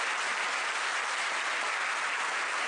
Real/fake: real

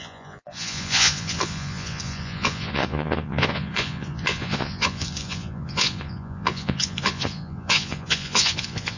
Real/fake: fake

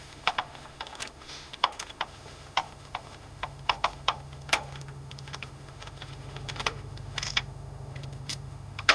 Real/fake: fake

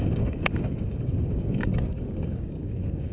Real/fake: fake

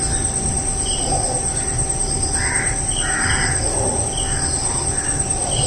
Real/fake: real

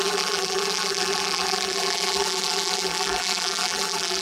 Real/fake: fake